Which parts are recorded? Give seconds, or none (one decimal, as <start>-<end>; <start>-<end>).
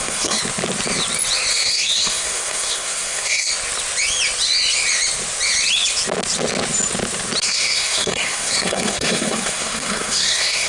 0.4-1.5; 3.5-7.4